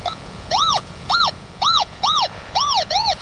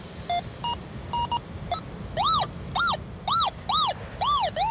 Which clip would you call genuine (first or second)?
second